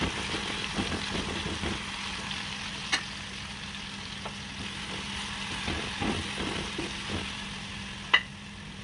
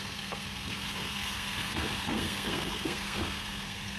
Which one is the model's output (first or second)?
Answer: second